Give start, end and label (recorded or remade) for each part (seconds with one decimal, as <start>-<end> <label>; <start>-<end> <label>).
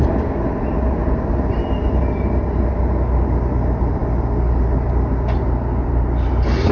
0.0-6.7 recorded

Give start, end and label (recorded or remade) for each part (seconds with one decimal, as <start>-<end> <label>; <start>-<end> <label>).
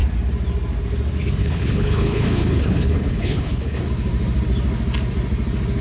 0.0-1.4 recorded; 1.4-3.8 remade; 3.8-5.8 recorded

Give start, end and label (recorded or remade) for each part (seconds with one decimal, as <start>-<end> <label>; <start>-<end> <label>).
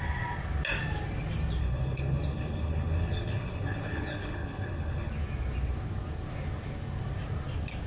0.0-1.6 recorded; 1.6-5.1 remade; 5.1-7.9 recorded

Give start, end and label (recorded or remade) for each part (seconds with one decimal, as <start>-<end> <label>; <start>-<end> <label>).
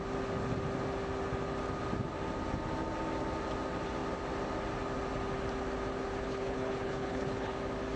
0.0-6.2 recorded; 6.2-7.5 remade; 7.5-8.0 recorded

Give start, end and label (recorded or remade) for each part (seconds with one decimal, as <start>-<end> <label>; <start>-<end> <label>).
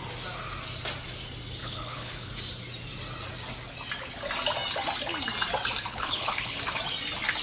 0.0-1.6 recorded; 1.6-2.3 remade; 2.3-5.9 recorded; 5.9-6.6 remade; 6.6-7.4 recorded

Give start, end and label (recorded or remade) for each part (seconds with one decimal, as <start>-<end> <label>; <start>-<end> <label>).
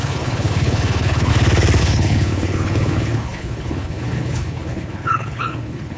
0.0-1.3 remade; 1.3-1.8 recorded; 1.8-6.0 remade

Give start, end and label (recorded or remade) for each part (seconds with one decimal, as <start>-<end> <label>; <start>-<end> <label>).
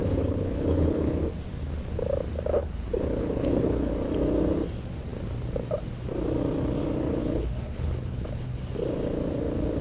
0.0-1.2 remade; 1.2-2.6 recorded; 2.6-3.9 remade; 3.9-7.2 recorded; 7.2-8.6 remade; 8.6-9.8 recorded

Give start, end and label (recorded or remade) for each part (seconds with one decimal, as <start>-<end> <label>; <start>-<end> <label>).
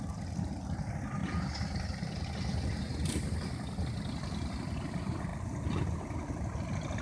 0.0-7.0 recorded